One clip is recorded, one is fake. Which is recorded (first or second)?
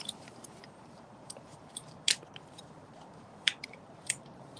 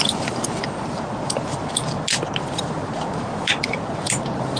second